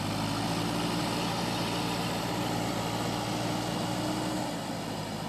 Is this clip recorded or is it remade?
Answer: recorded